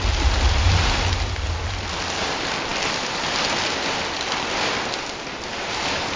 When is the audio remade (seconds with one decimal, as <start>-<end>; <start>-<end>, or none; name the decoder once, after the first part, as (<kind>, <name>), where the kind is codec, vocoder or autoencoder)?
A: none